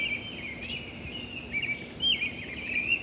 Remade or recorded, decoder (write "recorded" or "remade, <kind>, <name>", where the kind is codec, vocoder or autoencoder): recorded